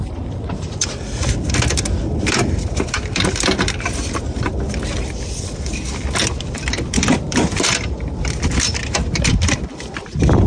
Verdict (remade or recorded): remade